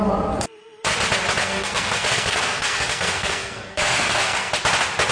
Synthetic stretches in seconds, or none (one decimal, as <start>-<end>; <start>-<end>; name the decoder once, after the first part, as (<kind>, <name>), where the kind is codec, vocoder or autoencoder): 1.4-4.5 (codec, SNAC)